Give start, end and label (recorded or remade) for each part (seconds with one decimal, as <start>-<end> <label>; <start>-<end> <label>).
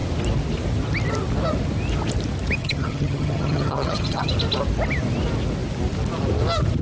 0.0-2.6 recorded; 2.6-4.3 remade; 4.3-6.8 recorded